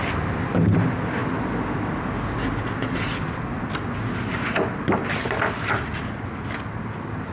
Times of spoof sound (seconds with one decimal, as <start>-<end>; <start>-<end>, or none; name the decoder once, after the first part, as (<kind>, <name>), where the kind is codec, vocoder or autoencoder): none